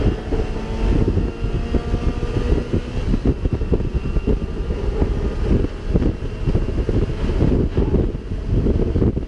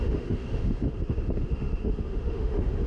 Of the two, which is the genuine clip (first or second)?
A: first